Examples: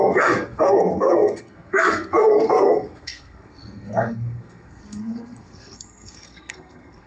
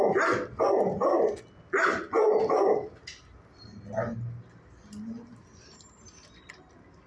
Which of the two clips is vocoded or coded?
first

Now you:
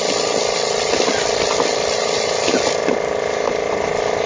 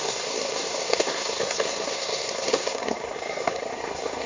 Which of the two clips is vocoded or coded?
second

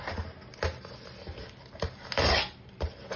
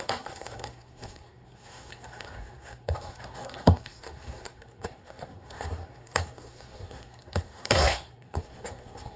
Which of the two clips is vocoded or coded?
second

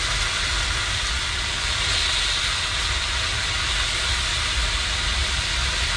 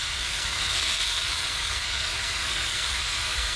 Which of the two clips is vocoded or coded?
second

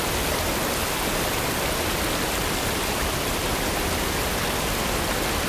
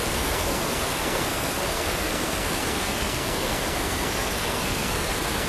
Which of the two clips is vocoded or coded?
second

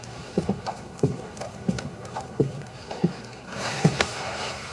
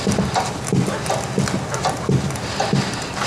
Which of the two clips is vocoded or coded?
first